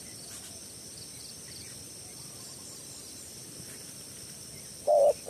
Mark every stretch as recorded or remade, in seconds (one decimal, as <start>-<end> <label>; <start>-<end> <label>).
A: 0.0-5.3 recorded